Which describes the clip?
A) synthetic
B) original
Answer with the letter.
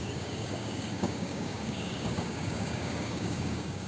A